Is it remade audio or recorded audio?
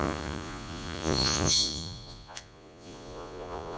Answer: remade